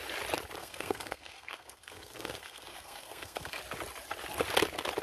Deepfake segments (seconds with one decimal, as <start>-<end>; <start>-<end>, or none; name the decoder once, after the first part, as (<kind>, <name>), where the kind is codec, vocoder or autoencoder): 0.6-3.6 (codec, SNAC)